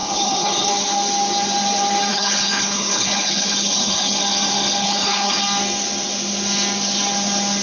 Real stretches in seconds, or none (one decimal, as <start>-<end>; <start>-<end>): 0.7-2.1; 4.2-4.8; 5.4-7.6